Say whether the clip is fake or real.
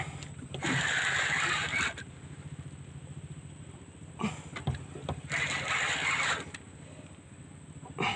real